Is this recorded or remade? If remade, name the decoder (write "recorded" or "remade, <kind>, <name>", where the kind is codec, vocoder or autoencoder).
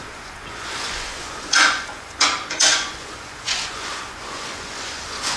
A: remade, vocoder, Vocos